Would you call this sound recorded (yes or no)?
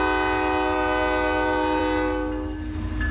yes